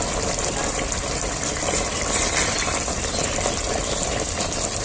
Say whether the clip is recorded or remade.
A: remade